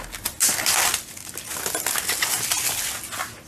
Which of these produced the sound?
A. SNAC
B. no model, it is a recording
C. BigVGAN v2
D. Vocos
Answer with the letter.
B